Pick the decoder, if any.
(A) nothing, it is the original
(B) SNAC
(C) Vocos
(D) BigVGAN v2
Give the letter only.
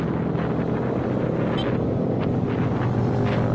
A